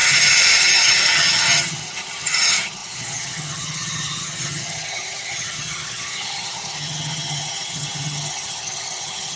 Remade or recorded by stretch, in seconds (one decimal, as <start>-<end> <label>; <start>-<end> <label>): 0.0-9.4 remade